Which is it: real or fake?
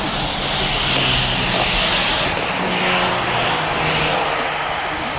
real